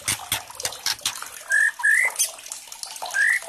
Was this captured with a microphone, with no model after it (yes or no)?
yes